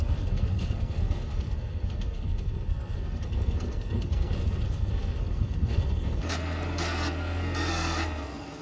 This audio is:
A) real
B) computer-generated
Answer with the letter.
B